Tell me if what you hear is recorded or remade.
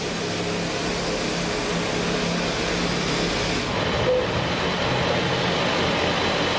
recorded